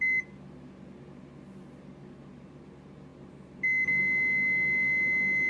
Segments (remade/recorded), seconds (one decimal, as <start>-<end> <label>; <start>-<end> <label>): 0.0-5.5 recorded